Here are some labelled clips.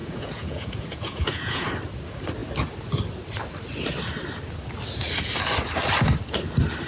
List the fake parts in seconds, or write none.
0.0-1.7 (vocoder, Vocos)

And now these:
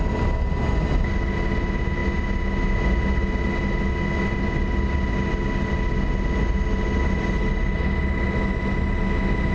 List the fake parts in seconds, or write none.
none

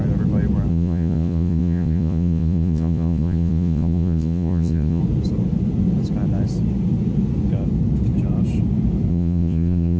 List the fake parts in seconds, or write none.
0.7-5.0 (vocoder, Vocos); 9.1-10.0

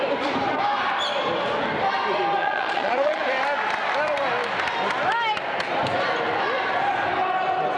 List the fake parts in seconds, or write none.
2.4-3.2 (vocoder, Vocos)